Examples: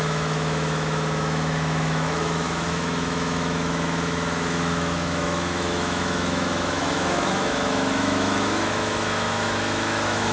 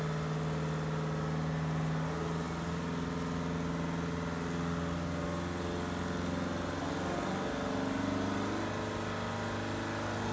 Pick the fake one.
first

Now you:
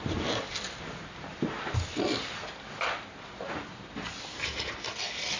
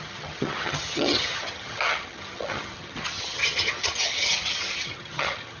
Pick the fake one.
second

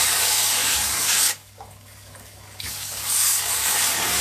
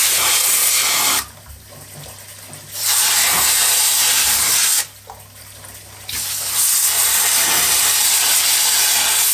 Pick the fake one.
first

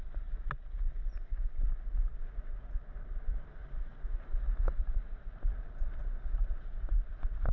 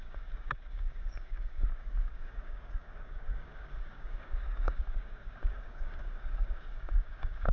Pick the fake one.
second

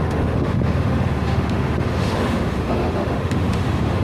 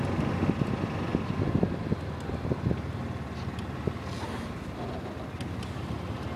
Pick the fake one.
first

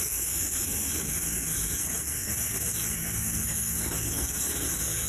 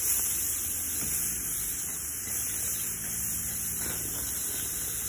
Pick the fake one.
first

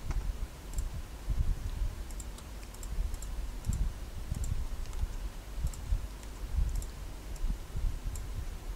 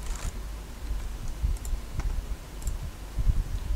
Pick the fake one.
first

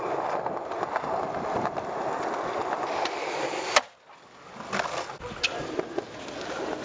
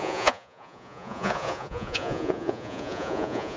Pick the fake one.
second